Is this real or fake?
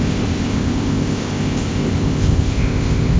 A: fake